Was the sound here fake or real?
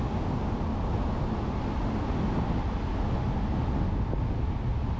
real